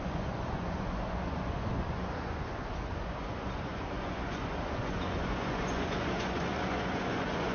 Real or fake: fake